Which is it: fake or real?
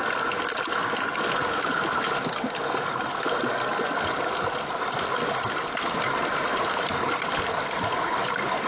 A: real